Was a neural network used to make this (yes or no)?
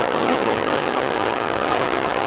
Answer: yes